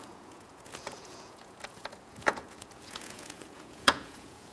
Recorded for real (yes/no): no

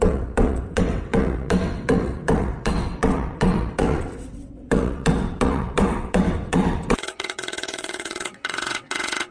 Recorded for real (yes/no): no